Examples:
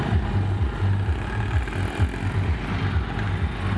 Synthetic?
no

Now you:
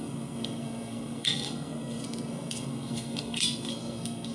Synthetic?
yes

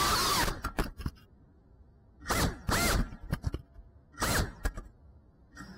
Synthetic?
no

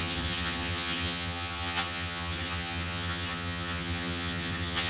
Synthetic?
yes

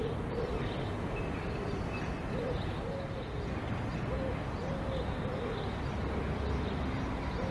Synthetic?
no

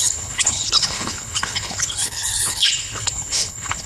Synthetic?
yes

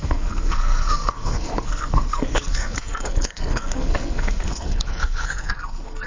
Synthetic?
yes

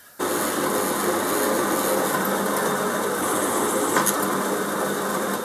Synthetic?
no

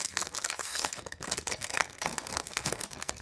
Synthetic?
yes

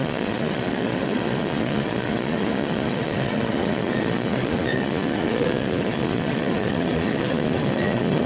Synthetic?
yes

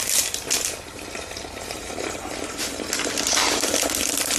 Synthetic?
no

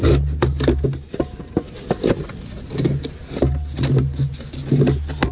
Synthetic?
no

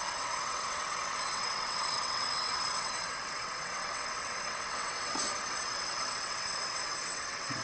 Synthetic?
yes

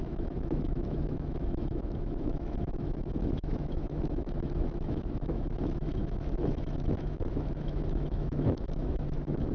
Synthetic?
yes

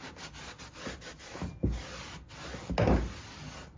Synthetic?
no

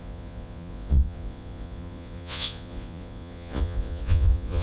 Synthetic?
yes